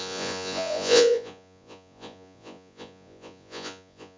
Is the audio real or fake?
fake